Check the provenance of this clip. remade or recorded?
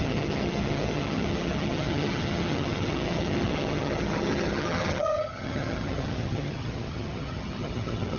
remade